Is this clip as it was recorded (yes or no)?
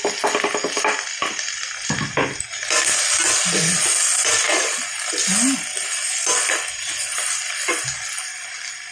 yes